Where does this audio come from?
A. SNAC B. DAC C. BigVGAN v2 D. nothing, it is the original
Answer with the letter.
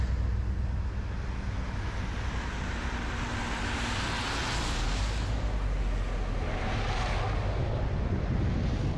D